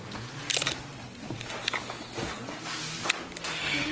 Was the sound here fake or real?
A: real